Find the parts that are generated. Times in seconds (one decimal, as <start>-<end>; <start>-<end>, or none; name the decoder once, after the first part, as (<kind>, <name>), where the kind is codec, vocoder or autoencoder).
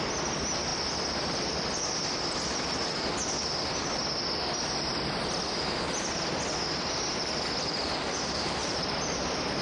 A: none